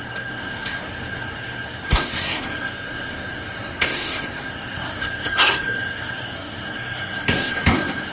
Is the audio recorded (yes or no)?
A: no